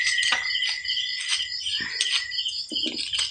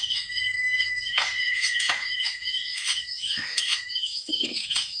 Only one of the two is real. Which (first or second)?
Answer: first